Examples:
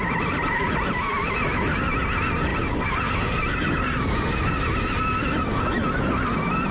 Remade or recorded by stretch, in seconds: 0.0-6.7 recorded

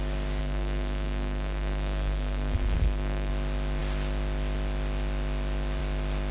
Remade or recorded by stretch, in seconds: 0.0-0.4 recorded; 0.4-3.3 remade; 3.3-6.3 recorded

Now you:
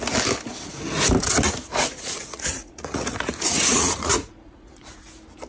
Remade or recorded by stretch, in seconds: 0.0-1.7 recorded; 1.7-5.0 remade; 5.0-5.5 recorded